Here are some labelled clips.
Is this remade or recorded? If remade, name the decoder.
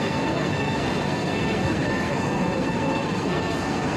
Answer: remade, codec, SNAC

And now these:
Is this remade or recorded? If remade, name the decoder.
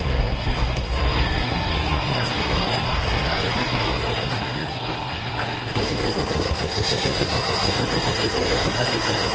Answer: remade, codec, SNAC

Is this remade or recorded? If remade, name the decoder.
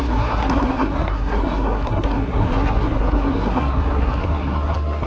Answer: remade, codec, SNAC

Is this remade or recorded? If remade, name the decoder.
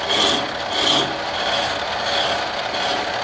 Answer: recorded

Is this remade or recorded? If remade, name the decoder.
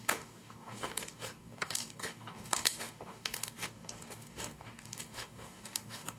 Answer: remade, codec, DAC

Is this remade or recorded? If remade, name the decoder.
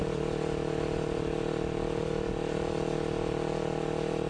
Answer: recorded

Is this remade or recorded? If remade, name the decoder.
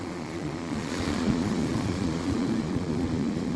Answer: remade, vocoder, Vocos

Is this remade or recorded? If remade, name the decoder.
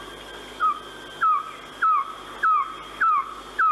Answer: recorded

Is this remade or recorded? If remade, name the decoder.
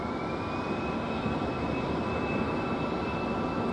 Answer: recorded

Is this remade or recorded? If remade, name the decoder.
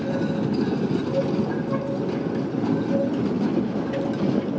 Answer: recorded